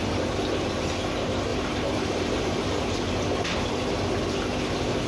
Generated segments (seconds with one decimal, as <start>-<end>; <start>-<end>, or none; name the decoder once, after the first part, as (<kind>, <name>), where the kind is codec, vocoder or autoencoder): 1.5-3.7 (vocoder, BigVGAN v2)